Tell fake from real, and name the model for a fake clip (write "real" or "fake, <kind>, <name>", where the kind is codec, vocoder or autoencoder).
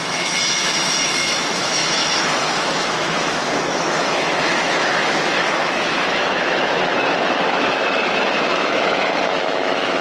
fake, autoencoder, DAC-VAE